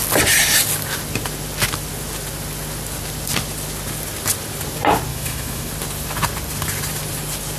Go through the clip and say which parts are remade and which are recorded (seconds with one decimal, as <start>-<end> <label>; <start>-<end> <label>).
0.0-5.1 recorded; 5.1-5.7 remade; 5.7-7.6 recorded